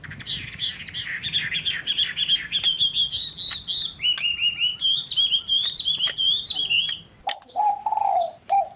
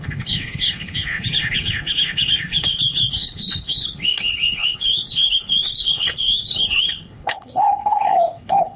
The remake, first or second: second